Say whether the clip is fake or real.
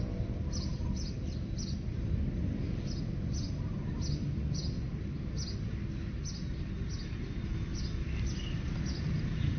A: real